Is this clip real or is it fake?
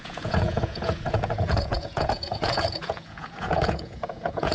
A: fake